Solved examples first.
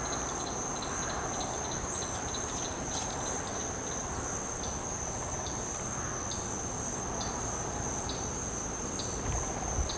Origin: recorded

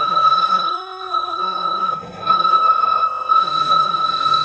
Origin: remade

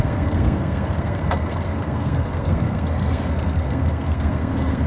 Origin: remade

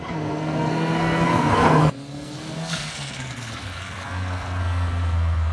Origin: remade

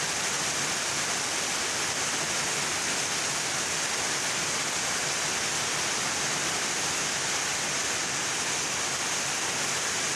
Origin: recorded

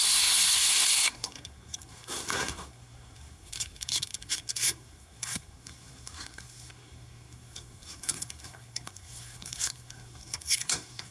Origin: remade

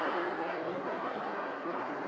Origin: remade